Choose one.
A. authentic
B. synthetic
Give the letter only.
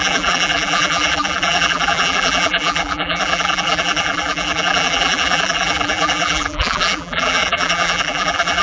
B